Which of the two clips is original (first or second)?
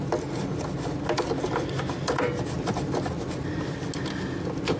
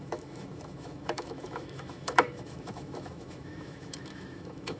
first